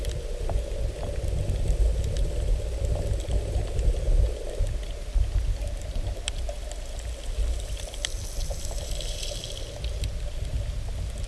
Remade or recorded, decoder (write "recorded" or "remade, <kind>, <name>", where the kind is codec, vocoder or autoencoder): recorded